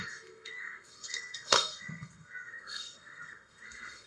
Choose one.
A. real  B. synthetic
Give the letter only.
B